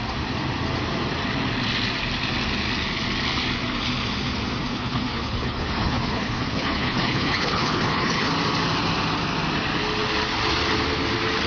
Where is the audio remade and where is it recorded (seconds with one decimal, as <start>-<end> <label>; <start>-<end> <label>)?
0.0-4.8 recorded; 4.8-8.3 remade; 8.3-11.5 recorded